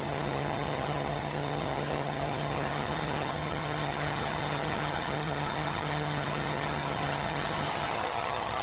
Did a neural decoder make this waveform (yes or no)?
yes